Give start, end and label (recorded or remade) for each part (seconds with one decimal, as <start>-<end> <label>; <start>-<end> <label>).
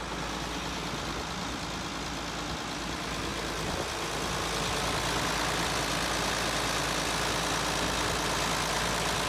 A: 0.0-9.3 recorded